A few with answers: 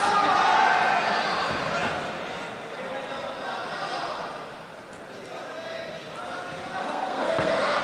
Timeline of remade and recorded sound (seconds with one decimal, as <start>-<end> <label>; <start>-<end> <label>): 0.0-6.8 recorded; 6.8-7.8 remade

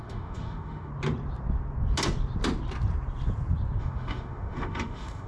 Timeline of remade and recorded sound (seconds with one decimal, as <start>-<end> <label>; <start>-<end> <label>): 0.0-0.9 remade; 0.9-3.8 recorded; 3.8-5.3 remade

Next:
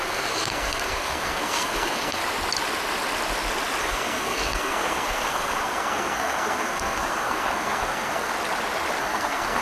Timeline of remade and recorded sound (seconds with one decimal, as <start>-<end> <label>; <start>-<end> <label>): 0.0-2.2 remade; 2.2-3.8 recorded; 3.8-8.3 remade; 8.3-9.0 recorded; 9.0-9.6 remade

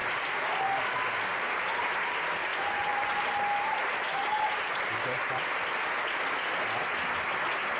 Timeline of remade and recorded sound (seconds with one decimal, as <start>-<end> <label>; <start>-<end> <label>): 0.0-2.5 recorded; 2.5-3.2 remade; 3.2-7.8 recorded